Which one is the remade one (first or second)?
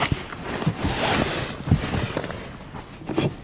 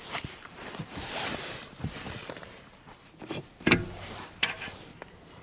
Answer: second